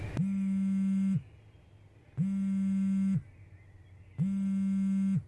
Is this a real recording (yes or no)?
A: yes